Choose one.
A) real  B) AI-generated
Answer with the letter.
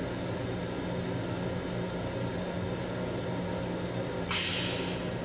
A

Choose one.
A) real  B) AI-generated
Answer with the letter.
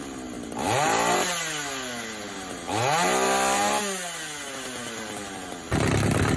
A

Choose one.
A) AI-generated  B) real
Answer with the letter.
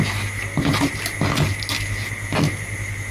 B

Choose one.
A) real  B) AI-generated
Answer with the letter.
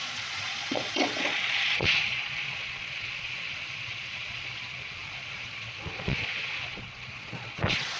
B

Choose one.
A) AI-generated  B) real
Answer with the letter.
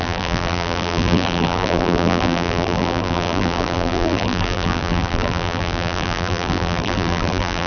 A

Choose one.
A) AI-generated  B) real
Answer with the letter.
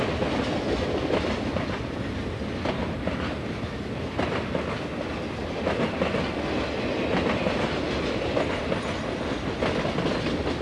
B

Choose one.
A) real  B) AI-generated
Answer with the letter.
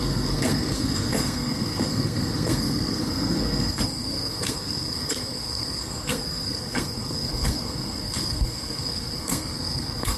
B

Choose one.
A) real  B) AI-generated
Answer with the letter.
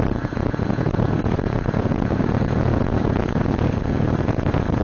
B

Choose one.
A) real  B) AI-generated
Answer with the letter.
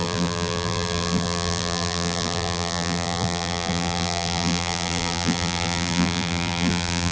B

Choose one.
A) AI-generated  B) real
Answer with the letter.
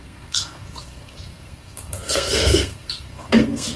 A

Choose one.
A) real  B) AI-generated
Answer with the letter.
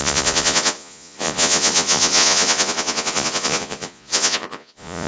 B